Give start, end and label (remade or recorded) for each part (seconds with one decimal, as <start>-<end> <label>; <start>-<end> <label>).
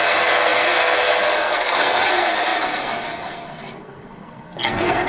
0.0-5.1 remade